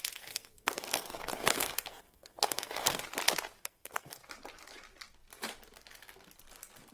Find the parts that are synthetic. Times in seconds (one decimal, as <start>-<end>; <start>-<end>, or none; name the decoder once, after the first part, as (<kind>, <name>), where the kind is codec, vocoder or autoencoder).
0.0-3.0 (codec, SNAC); 3.6-4.2